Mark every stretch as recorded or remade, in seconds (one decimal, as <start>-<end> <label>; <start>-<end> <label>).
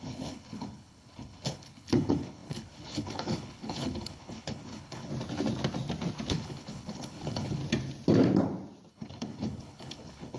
0.0-5.1 remade; 5.1-6.3 recorded; 6.3-7.6 remade; 7.6-8.9 recorded; 8.9-10.4 remade